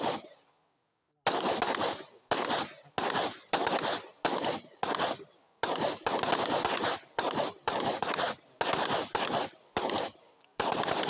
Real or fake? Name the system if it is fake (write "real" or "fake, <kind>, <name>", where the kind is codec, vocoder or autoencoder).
real